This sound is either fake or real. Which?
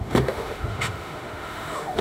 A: fake